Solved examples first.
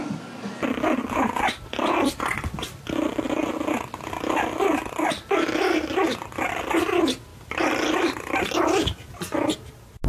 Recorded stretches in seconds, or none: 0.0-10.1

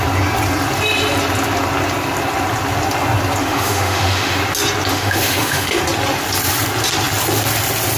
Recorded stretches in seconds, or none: 0.0-3.4; 4.4-4.9; 5.8-8.0

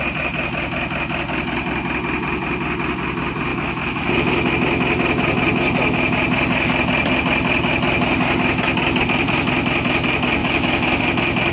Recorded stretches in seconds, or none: 0.0-3.5; 4.5-10.4; 11.0-11.5

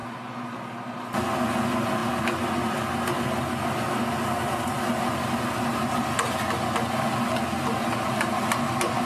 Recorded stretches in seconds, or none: 0.0-9.1

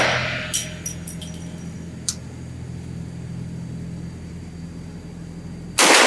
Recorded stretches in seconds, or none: 0.0-6.1

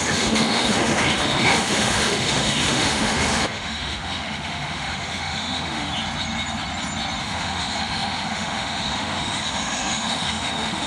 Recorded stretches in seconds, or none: 5.9-7.2